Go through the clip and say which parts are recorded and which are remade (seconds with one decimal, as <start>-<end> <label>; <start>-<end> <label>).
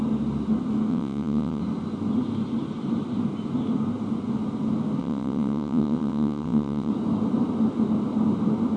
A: 0.0-0.9 recorded; 0.9-1.6 remade; 1.6-5.0 recorded; 5.0-6.9 remade; 6.9-8.8 recorded